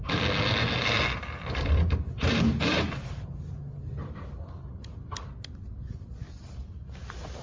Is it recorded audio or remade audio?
recorded